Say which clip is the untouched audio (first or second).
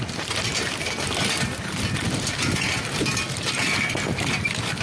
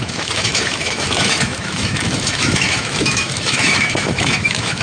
first